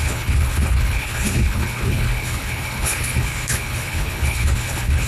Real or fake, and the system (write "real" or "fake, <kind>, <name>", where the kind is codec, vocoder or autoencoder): fake, codec, HILCodec